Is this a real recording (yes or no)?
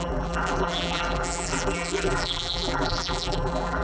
no